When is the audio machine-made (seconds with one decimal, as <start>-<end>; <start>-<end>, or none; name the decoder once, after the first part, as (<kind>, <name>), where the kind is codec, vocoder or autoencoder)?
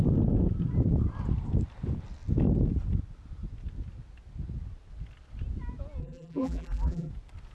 6.0-7.1 (vocoder, BigVGAN v2)